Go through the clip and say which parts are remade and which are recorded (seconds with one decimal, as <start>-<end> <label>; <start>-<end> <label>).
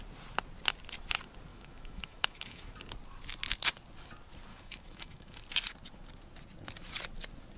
0.0-1.5 recorded; 1.5-2.8 remade; 2.8-4.5 recorded; 4.5-5.4 remade; 5.4-7.6 recorded